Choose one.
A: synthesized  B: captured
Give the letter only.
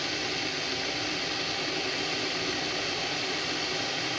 B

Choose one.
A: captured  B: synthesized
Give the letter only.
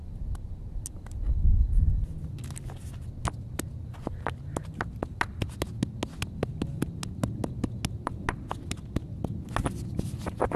A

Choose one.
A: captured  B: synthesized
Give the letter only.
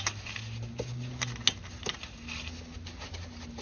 A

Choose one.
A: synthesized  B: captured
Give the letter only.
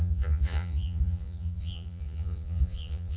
A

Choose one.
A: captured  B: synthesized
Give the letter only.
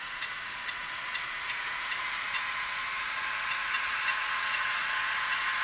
B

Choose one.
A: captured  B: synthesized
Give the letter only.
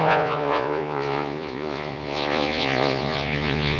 B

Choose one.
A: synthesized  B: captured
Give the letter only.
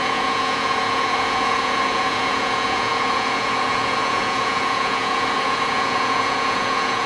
A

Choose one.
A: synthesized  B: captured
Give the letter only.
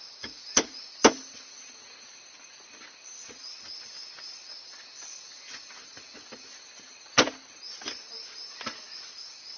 B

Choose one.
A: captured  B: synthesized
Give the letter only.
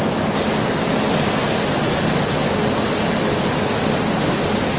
A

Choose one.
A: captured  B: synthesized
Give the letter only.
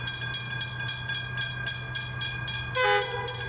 A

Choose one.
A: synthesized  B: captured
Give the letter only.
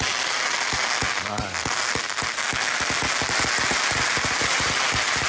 B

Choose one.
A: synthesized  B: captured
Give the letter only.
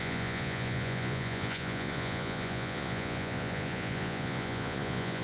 A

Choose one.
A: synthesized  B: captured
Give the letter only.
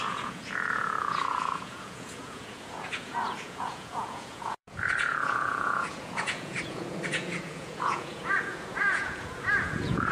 A